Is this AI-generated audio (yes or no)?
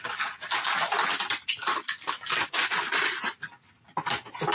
no